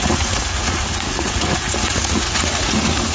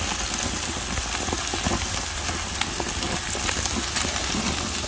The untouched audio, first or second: second